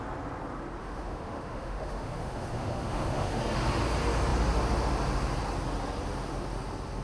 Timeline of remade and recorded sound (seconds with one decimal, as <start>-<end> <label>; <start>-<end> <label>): 0.0-0.8 recorded; 0.8-3.4 remade; 3.4-7.0 recorded